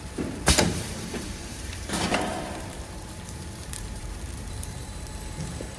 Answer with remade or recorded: remade